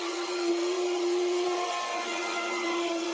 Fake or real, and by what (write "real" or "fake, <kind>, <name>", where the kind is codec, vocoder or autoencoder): fake, vocoder, Vocos